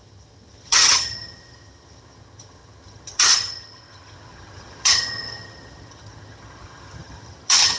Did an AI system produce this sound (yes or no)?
yes